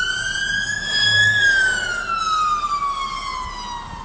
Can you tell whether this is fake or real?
real